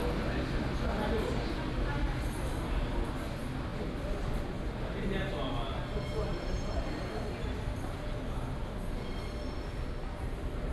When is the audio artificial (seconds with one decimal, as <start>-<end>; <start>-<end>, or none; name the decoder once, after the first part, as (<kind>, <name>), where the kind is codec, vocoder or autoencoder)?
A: none